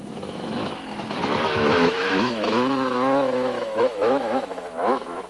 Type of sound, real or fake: fake